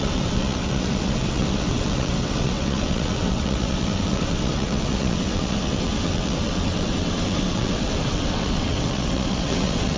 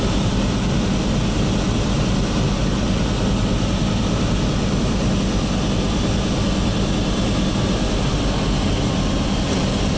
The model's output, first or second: first